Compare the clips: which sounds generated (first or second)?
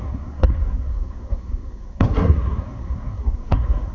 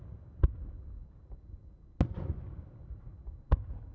first